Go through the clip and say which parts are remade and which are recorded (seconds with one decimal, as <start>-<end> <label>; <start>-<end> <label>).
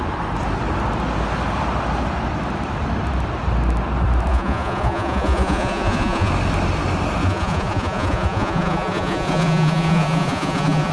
0.0-4.3 recorded; 4.3-6.3 remade; 6.3-7.2 recorded; 7.2-10.9 remade